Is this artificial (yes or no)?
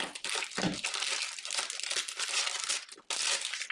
no